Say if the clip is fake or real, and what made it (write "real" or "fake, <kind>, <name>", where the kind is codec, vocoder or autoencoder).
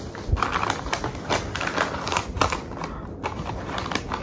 real